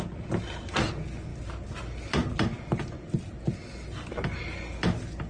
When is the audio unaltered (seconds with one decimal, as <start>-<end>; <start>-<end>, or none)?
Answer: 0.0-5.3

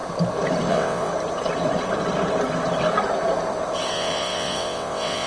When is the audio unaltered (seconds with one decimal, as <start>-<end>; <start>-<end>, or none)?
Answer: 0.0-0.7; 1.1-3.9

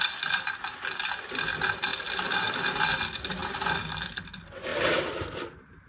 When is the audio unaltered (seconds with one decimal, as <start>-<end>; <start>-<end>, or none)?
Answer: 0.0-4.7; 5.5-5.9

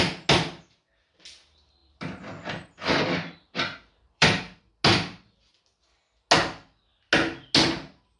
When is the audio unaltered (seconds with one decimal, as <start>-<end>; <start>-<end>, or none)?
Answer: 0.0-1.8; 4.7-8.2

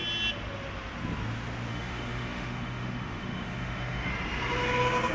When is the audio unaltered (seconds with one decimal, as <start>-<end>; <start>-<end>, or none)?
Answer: 0.0-1.7; 4.1-5.1